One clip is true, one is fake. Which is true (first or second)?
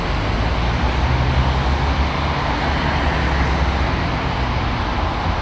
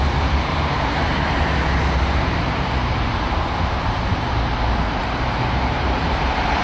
first